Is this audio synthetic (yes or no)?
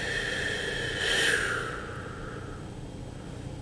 no